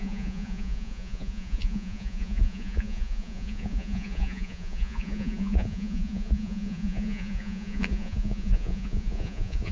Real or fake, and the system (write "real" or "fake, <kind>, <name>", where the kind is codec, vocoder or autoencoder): fake, vocoder, Vocos